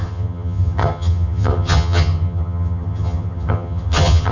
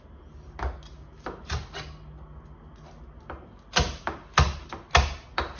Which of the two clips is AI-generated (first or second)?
first